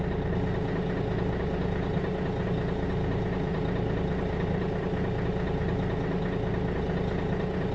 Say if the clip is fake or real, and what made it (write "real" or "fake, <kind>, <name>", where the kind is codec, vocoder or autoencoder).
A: real